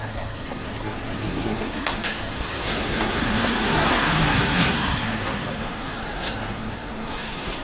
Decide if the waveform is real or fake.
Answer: fake